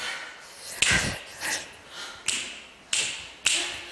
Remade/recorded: recorded